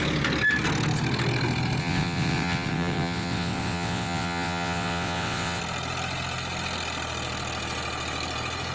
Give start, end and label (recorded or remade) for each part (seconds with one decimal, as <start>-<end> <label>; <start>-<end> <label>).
0.0-1.8 recorded; 1.8-5.6 remade; 5.6-8.7 recorded